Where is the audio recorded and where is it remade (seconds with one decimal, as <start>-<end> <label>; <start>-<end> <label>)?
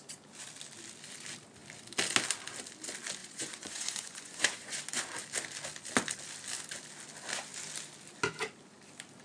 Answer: 0.0-3.2 recorded; 3.2-4.8 remade; 4.8-9.2 recorded